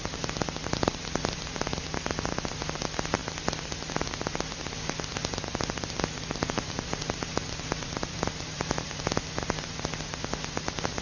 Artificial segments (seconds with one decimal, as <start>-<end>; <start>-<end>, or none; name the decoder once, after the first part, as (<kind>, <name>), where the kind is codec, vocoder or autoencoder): none